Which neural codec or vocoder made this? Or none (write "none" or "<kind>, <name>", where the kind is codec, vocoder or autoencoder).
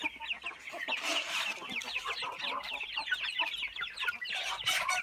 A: none